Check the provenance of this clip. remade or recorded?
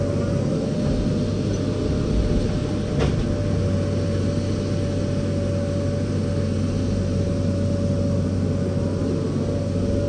recorded